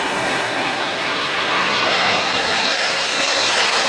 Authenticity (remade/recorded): remade